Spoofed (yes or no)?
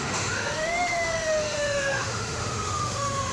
yes